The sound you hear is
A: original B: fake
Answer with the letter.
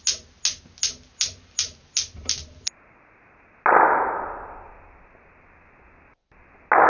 A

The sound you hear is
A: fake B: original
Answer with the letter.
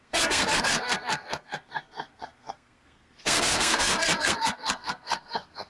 A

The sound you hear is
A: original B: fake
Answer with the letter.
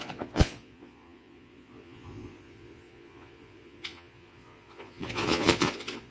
B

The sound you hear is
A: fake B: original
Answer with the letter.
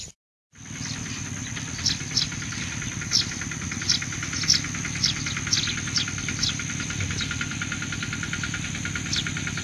B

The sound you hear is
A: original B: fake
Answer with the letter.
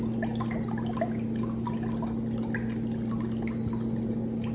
A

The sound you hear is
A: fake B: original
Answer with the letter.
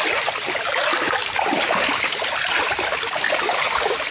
B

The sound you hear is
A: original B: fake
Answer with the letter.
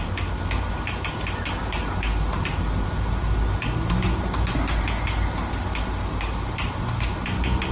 A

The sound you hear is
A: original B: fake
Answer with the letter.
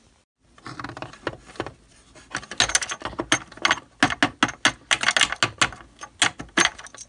A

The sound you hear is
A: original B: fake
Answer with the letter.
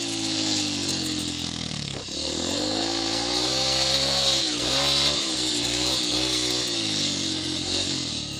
B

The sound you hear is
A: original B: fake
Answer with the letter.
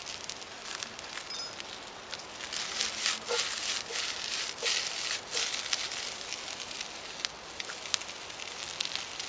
A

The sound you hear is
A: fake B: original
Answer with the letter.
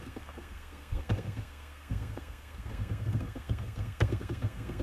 A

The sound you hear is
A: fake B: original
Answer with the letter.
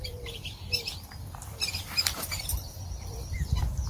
A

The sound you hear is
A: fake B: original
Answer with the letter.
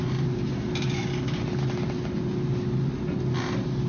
B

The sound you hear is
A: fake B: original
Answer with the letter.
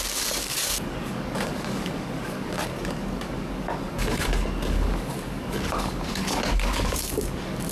A